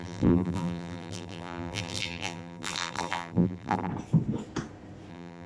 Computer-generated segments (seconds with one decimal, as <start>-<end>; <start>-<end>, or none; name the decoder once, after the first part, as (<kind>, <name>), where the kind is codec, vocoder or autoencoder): 0.0-3.9 (vocoder, BigVGAN v2); 5.1-5.5